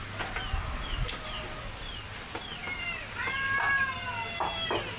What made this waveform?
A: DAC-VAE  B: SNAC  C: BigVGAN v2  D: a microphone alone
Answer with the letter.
D